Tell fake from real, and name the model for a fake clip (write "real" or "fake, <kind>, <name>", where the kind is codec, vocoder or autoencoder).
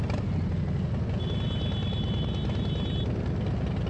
real